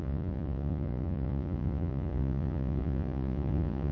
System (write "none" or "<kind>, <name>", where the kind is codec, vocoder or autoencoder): vocoder, Vocos